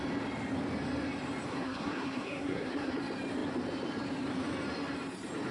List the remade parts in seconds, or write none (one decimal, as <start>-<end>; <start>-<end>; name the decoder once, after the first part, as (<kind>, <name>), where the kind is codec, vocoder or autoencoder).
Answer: 1.5-2.9 (codec, SNAC)